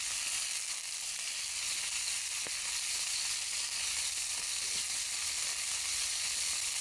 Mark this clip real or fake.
real